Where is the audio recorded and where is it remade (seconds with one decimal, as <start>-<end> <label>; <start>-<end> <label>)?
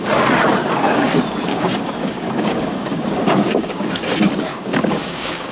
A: 0.0-0.6 recorded; 0.6-1.1 remade; 1.1-1.5 recorded; 1.5-3.9 remade; 3.9-4.5 recorded; 4.5-5.5 remade